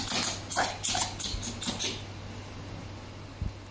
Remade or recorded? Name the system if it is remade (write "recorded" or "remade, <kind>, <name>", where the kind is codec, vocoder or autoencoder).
recorded